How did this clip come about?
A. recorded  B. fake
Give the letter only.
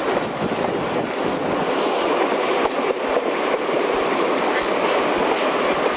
A